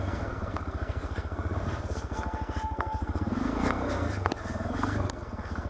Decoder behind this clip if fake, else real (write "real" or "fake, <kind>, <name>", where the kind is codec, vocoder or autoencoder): fake, codec, SNAC